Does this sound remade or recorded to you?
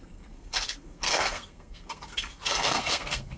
remade